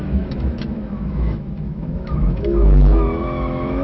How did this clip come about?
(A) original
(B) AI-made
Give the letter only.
B